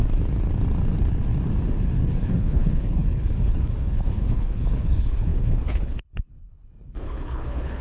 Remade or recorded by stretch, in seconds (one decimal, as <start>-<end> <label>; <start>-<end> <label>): 0.0-2.2 recorded; 2.2-7.8 remade